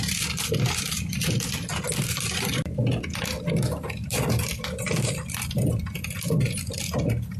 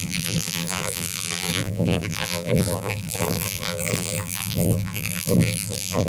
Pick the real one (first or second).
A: first